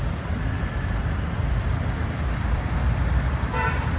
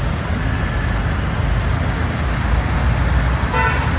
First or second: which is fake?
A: first